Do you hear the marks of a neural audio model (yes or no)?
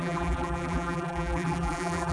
yes